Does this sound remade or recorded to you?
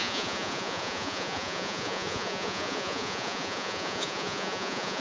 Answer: remade